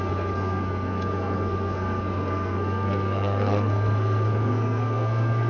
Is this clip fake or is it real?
fake